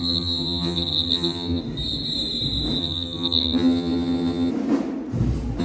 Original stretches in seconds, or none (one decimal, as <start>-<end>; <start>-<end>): 1.6-2.8; 4.5-5.6